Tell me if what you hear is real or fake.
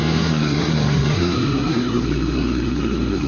fake